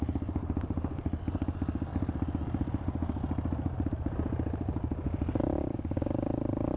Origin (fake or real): real